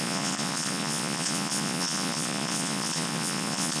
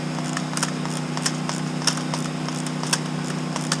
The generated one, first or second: first